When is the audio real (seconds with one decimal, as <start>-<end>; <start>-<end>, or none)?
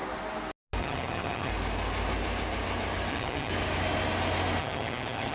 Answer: 0.0-0.8; 1.5-3.1; 3.5-4.6